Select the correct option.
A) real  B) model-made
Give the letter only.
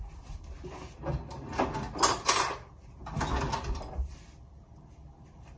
A